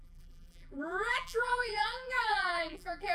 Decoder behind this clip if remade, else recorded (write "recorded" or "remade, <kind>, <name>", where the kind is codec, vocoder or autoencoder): remade, vocoder, BigVGAN v2